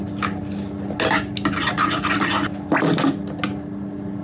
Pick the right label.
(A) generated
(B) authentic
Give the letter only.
B